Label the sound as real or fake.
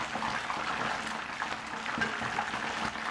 real